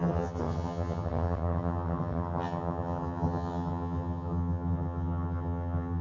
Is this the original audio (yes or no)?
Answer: no